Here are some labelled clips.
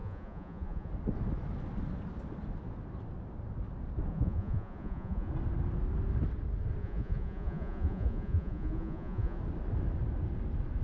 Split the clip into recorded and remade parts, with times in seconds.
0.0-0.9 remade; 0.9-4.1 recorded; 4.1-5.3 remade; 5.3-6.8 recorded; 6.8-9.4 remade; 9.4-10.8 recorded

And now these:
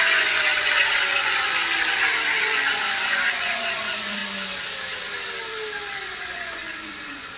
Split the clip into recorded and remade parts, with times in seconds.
0.0-1.6 remade; 1.6-2.4 recorded; 2.4-4.2 remade; 4.2-6.0 recorded; 6.0-7.4 remade

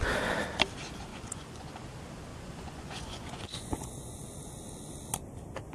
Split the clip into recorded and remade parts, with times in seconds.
0.0-1.1 recorded; 1.1-1.7 remade; 1.7-2.3 recorded; 2.3-4.2 remade; 4.2-5.7 recorded

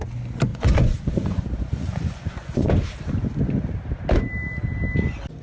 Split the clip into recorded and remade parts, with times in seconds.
0.0-0.5 recorded; 0.5-2.7 remade; 2.7-5.4 recorded

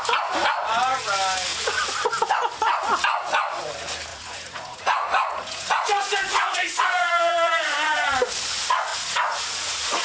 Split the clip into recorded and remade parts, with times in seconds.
0.0-1.5 recorded; 1.5-2.1 remade; 2.1-4.1 recorded; 4.1-8.3 remade; 8.3-8.9 recorded; 8.9-10.0 remade

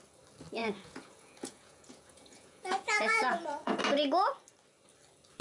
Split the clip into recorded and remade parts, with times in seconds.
0.0-0.6 recorded; 0.6-3.8 remade; 3.8-5.4 recorded

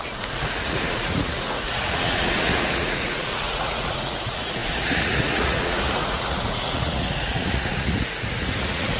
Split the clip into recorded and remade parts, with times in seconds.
0.0-9.0 remade